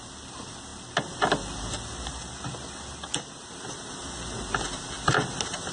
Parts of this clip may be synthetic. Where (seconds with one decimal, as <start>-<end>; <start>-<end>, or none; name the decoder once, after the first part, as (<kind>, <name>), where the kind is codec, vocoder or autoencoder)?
none

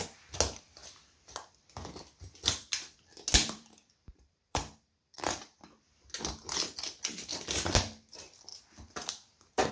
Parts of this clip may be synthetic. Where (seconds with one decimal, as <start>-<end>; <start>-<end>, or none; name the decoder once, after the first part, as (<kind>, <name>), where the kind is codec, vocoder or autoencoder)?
3.4-5.7 (vocoder, BigVGAN v2); 8.5-9.7

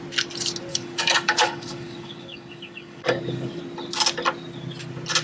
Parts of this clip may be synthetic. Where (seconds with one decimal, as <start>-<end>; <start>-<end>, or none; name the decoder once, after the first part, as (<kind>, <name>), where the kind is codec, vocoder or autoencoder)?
0.7-3.6 (codec, DAC)

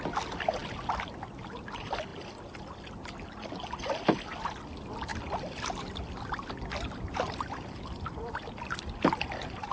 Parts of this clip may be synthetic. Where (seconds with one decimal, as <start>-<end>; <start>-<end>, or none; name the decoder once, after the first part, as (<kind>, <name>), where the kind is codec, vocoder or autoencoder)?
2.1-2.7 (vocoder, BigVGAN v2); 5.1-7.7

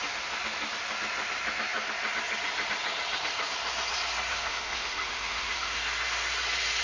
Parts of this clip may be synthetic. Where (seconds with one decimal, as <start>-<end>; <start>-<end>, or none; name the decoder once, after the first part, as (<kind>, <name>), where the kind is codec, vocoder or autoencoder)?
4.3-5.8 (autoencoder, DAC-VAE)

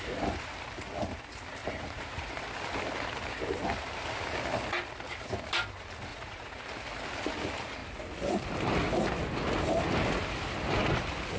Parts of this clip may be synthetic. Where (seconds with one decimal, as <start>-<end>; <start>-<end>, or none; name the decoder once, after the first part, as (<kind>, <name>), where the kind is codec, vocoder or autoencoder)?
1.6-2.4 (vocoder, Vocos); 6.1-6.6